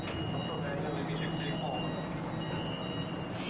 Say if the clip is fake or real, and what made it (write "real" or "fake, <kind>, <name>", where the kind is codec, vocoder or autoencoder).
real